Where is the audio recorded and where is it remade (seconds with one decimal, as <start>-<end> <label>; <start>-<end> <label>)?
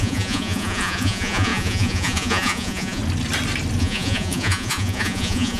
0.0-3.0 remade; 3.0-3.8 recorded; 3.8-5.6 remade